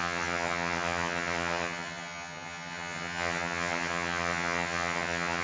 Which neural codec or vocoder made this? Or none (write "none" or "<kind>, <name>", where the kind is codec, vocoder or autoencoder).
vocoder, HiFi-GAN